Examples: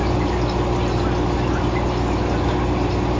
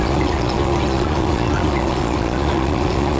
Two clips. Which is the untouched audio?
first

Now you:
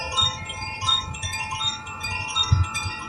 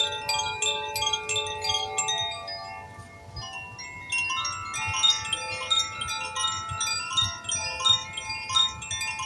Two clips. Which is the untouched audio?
second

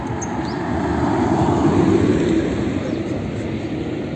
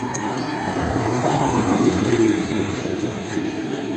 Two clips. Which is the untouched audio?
first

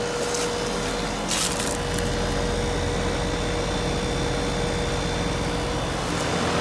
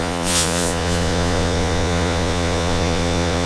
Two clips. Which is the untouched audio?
first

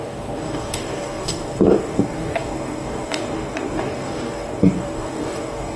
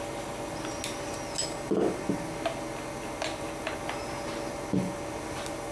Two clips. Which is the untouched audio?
second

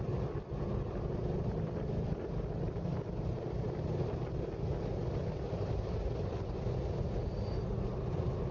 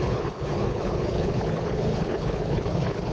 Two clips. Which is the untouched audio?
first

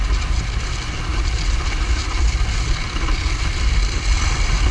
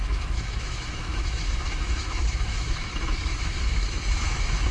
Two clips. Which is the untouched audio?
first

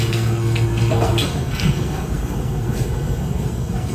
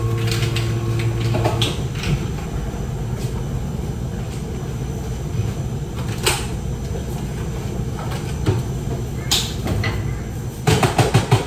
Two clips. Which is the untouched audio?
second